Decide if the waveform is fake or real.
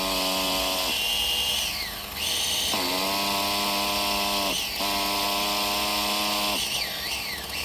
real